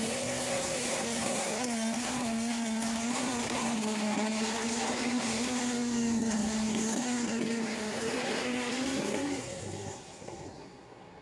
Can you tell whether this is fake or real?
fake